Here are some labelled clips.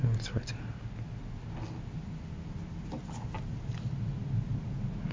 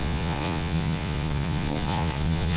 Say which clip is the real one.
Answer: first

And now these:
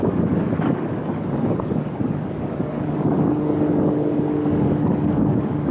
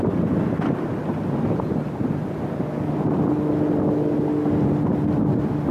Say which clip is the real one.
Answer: second